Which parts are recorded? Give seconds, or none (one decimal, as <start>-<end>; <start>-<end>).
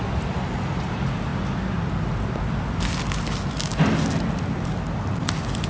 0.0-5.7